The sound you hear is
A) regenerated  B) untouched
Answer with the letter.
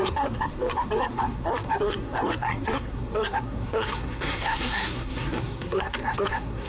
A